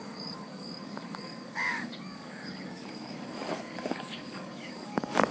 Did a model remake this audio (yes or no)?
yes